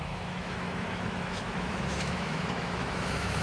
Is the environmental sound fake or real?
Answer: fake